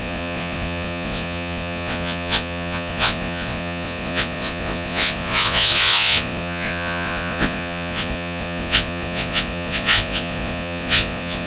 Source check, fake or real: fake